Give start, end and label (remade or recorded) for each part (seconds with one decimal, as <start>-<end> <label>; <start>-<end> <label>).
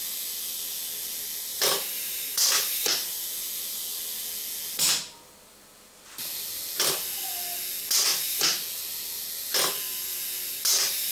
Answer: 0.0-1.5 recorded; 1.5-2.9 remade; 2.9-11.1 recorded